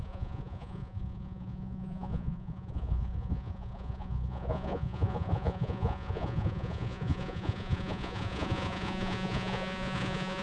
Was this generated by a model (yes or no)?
yes